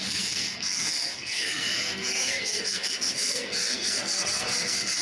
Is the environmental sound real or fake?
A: fake